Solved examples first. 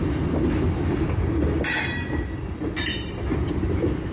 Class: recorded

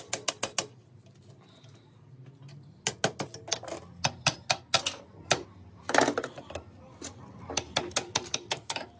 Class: recorded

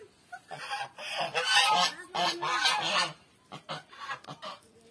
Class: recorded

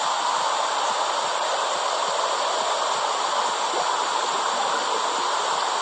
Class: recorded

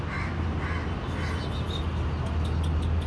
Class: recorded